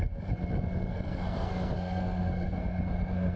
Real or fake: fake